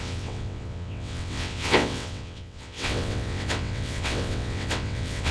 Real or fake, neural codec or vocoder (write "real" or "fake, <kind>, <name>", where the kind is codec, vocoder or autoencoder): fake, vocoder, WaveNeXt